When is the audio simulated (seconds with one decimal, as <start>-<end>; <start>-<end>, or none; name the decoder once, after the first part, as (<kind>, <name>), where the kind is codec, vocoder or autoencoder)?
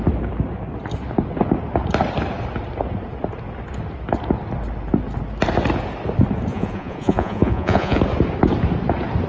6.5-8.0 (vocoder, Vocos)